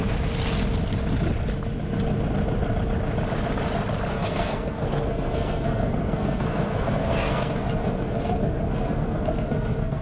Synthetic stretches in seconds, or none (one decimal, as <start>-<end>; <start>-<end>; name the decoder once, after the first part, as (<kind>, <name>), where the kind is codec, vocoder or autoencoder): 4.1-10.0 (codec, SNAC)